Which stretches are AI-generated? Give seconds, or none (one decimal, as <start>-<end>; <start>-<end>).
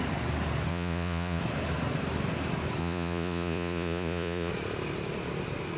0.7-1.4; 2.8-4.5